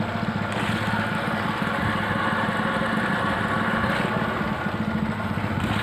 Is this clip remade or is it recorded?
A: recorded